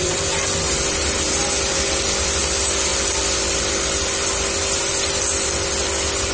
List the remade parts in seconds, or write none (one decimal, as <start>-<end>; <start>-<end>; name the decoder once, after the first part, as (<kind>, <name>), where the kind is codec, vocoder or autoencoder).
none